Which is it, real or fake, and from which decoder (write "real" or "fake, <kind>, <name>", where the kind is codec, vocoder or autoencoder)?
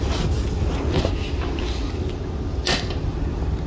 real